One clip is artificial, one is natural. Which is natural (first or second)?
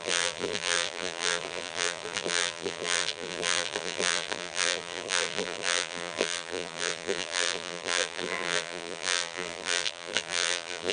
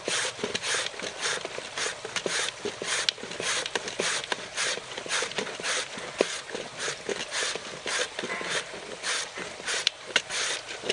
second